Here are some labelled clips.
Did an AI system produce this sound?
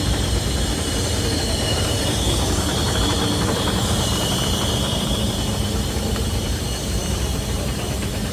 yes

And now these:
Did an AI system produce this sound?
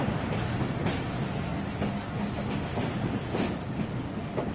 no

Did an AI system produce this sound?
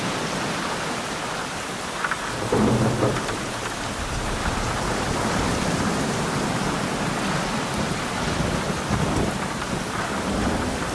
yes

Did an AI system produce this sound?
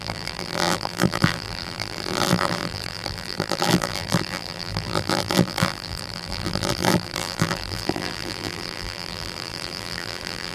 yes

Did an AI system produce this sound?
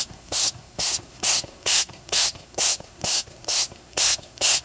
yes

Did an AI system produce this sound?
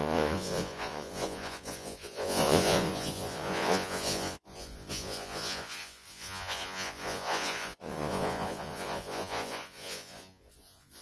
yes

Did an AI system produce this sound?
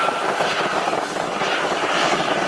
no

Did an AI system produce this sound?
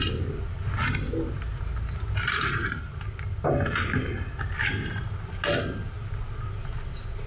no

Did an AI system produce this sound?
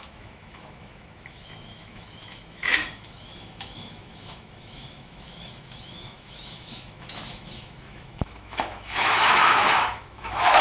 yes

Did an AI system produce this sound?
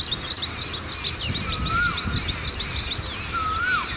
yes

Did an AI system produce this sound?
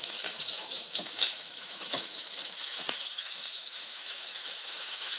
yes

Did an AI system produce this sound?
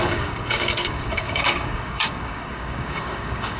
yes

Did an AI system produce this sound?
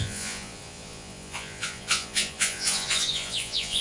yes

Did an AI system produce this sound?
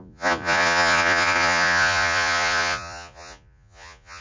yes